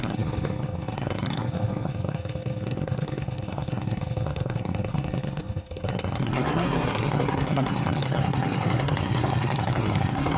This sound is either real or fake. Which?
fake